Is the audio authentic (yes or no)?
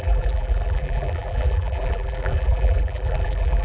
no